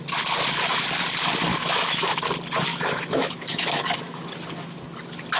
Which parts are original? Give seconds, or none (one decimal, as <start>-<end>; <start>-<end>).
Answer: 0.0-1.5; 2.2-2.7; 4.2-5.4